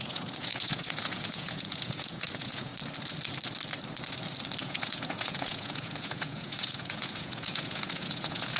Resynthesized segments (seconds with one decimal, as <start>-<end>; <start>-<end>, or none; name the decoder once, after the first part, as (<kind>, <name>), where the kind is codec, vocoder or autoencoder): 0.0-2.7 (vocoder, Vocos); 4.6-8.6